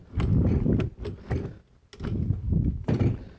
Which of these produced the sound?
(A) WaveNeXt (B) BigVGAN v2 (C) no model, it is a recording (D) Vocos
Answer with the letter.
C